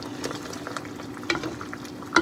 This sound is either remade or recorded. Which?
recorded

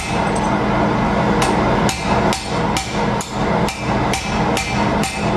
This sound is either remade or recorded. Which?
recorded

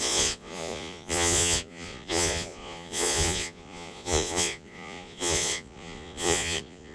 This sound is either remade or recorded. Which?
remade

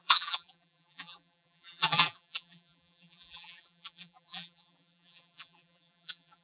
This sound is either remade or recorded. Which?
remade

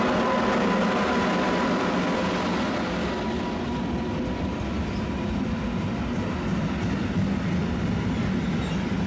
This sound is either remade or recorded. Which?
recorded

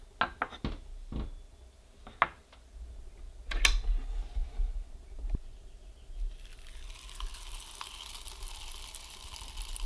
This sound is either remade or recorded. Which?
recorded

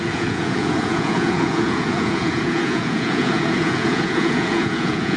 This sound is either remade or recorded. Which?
remade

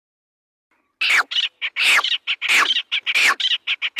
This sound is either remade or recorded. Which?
recorded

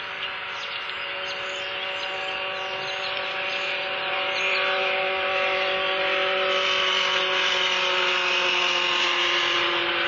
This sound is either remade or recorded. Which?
recorded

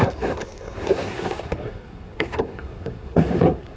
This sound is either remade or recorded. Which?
remade